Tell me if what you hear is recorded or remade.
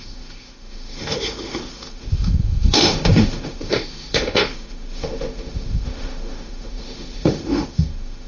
remade